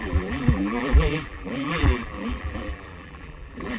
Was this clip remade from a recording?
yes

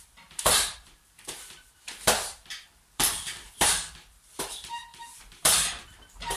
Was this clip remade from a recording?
yes